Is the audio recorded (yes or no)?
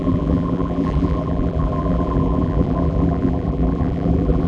no